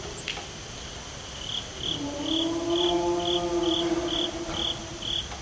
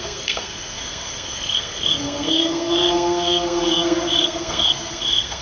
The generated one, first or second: second